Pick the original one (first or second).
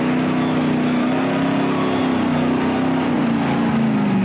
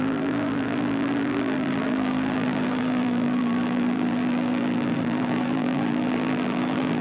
first